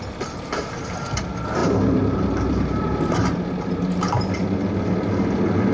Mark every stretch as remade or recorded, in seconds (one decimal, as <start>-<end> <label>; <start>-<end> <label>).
0.0-1.6 recorded; 1.6-4.2 remade; 4.2-5.7 recorded